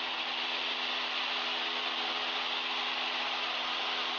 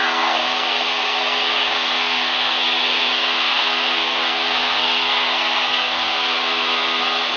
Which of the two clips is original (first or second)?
first